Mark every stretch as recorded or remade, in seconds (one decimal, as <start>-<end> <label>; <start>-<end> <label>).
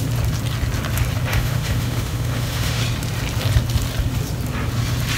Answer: 0.0-1.3 recorded; 1.3-2.8 remade; 2.8-5.2 recorded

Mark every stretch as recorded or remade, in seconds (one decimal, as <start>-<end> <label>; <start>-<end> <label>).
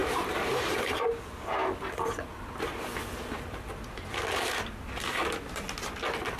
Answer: 0.0-1.1 remade; 1.1-6.4 recorded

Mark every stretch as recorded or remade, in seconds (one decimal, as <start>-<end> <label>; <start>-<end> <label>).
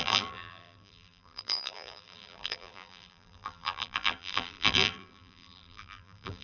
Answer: 0.0-6.4 remade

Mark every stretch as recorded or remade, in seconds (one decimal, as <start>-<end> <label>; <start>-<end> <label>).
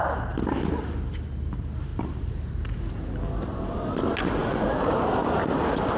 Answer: 0.0-4.4 recorded; 4.4-4.9 remade; 4.9-6.0 recorded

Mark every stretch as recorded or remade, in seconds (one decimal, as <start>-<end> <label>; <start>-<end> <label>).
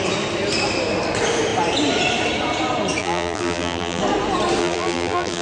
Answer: 0.0-3.0 recorded; 3.0-4.0 remade; 4.0-4.6 recorded; 4.6-5.4 remade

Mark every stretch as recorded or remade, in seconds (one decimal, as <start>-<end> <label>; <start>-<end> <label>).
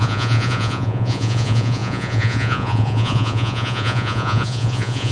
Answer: 0.0-5.1 remade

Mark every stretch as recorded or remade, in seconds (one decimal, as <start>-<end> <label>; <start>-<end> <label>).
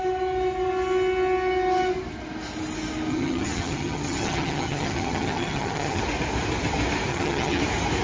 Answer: 0.0-3.1 recorded; 3.1-6.0 remade; 6.0-7.1 recorded; 7.1-7.6 remade; 7.6-8.0 recorded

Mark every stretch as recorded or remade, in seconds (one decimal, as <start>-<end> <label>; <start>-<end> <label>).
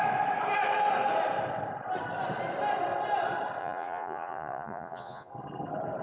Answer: 0.0-3.6 recorded; 3.6-5.3 remade; 5.3-6.0 recorded